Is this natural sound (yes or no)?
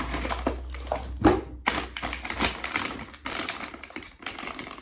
yes